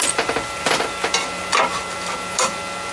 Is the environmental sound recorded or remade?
recorded